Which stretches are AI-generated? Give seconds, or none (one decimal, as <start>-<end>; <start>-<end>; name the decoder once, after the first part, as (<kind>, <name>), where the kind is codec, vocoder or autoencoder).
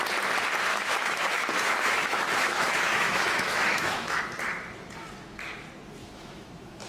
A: 0.7-4.2 (autoencoder, DAC-VAE); 6.0-6.9